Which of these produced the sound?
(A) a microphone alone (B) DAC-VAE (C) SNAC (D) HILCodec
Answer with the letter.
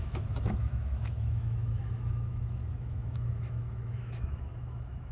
B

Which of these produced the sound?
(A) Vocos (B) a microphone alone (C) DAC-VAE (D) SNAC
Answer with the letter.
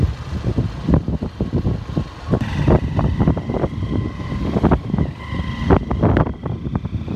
B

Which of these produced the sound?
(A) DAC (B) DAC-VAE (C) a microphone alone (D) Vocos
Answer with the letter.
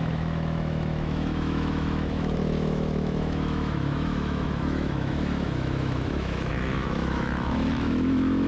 B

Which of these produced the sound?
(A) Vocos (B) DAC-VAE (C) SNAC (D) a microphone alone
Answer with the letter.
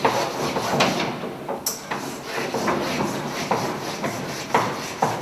D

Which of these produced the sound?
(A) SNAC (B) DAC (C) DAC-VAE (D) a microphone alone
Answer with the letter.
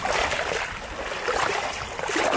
D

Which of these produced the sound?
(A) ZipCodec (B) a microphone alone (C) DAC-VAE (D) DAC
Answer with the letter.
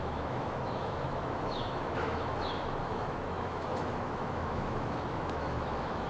C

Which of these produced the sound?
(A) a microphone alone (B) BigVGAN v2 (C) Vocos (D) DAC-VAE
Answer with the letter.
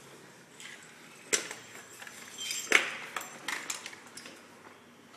A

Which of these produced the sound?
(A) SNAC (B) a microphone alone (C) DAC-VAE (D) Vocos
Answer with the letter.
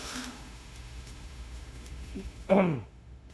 C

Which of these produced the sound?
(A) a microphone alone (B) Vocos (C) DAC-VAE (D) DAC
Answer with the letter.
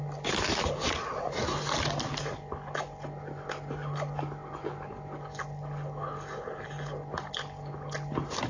A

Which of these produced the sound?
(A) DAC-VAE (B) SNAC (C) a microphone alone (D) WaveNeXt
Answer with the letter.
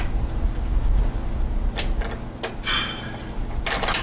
C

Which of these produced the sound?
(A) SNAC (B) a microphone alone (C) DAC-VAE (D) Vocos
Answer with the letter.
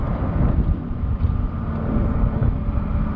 B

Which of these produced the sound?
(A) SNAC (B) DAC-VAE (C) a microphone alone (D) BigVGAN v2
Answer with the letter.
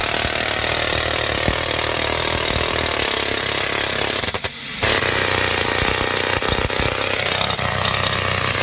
C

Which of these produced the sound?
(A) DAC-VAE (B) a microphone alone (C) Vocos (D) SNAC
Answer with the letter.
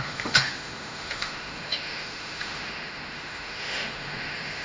A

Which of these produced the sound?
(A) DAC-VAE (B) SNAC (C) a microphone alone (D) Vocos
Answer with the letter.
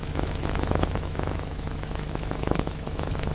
A